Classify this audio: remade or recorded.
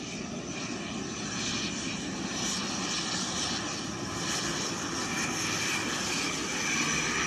recorded